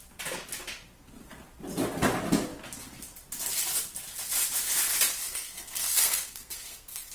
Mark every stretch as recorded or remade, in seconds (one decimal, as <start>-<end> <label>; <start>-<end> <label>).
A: 0.0-5.2 recorded; 5.2-7.1 remade